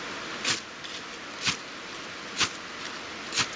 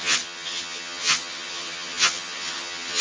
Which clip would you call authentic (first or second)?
first